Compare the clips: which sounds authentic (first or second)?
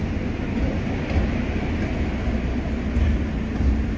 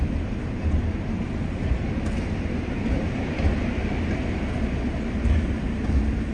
first